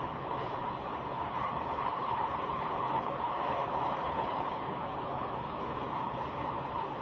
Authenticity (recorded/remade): remade